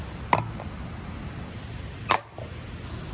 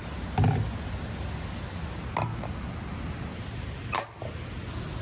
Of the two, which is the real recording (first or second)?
second